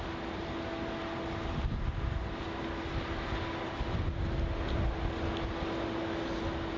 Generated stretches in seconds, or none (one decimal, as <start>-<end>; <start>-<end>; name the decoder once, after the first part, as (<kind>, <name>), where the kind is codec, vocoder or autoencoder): none